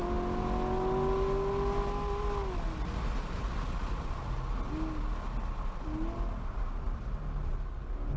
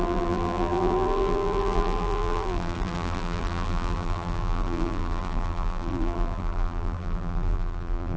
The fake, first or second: second